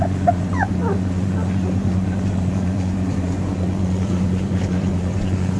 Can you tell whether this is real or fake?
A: fake